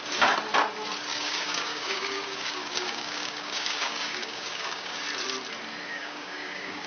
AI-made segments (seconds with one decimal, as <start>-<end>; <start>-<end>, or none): 1.1-5.0; 5.9-6.9